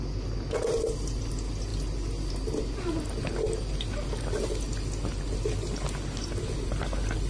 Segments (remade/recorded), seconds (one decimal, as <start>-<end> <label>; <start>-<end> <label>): 0.0-7.3 recorded

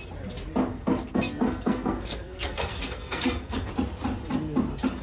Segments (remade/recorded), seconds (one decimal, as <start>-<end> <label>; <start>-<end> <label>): 0.0-0.7 recorded; 0.7-3.7 remade; 3.7-5.0 recorded